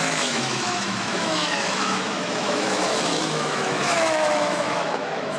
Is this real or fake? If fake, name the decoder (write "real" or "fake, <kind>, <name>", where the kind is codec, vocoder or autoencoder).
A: fake, autoencoder, DAC-VAE